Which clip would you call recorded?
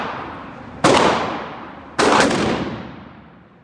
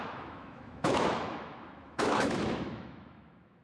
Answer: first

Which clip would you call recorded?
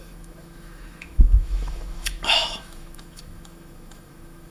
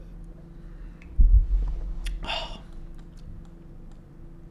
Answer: second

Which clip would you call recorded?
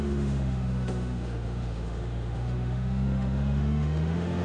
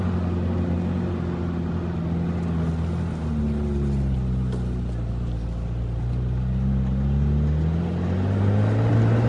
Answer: second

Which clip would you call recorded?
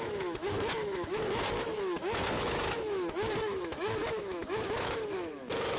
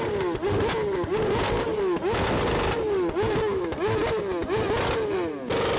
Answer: second